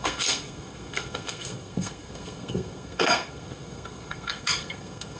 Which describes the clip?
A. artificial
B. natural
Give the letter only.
A